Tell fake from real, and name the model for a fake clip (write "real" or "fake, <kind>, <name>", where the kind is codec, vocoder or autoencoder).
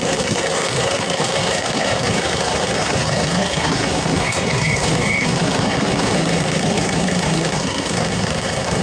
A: fake, codec, SNAC